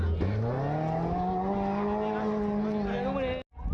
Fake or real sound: real